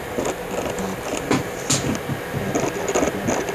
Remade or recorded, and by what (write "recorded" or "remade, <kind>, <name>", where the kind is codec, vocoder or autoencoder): recorded